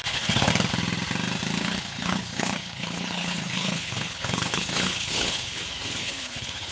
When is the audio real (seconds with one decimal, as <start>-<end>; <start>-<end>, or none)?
0.5-1.6; 5.6-6.0